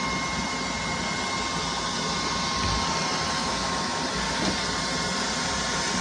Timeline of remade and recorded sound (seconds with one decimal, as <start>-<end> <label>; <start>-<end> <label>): 0.0-3.4 recorded; 3.4-4.0 remade; 4.0-6.0 recorded